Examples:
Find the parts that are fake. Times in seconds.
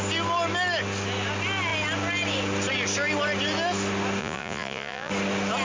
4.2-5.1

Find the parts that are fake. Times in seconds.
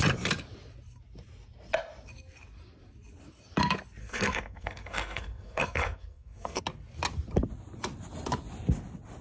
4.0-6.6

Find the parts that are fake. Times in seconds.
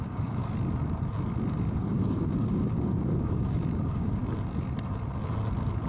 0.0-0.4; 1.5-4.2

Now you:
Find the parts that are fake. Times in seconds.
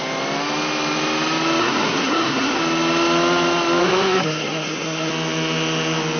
1.6-2.6; 3.8-5.1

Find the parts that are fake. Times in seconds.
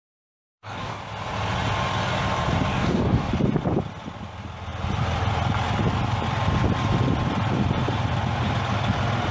0.5-1.0; 2.7-3.3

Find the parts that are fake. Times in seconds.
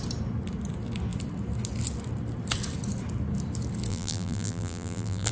3.9-5.3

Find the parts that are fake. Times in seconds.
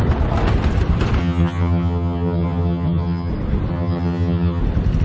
1.2-3.3; 3.7-4.6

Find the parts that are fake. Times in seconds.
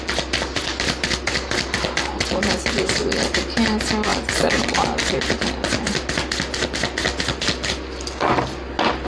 none